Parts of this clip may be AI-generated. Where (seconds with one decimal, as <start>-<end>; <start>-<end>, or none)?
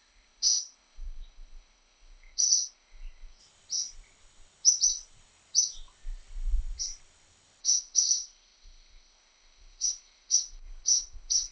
0.0-3.4; 7.6-11.5